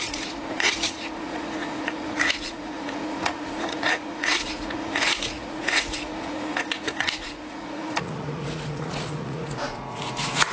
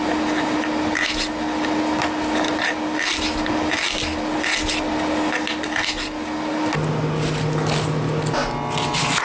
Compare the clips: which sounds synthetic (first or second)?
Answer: first